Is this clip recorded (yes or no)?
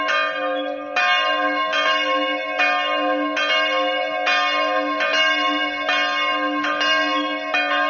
yes